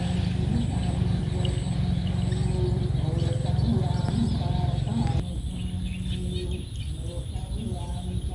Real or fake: real